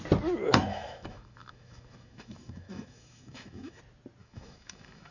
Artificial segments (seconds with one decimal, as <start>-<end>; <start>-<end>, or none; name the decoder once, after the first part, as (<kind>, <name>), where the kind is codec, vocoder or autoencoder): 0.7-3.8 (autoencoder, DAC-VAE); 4.2-5.1